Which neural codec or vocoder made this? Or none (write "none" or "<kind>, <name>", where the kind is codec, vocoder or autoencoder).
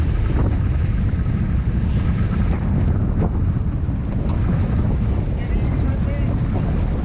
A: none